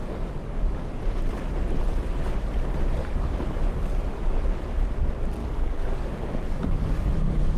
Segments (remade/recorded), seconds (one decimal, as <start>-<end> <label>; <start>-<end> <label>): 0.0-1.0 remade; 1.0-3.0 recorded; 3.0-4.6 remade; 4.6-5.4 recorded; 5.4-7.6 remade